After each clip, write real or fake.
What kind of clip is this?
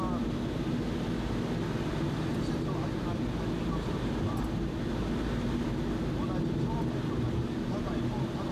real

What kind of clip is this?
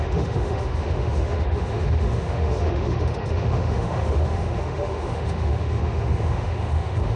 fake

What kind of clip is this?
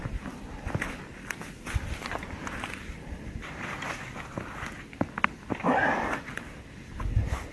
real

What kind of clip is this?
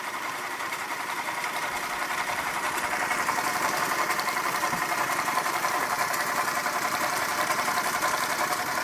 fake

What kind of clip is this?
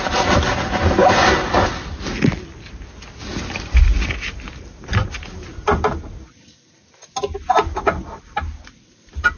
real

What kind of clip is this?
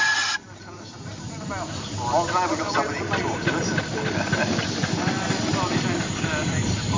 real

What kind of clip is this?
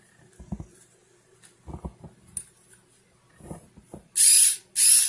real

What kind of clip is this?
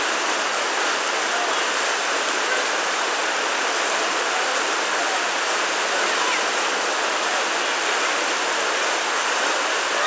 real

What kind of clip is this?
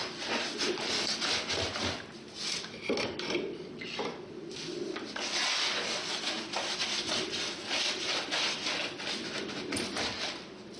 real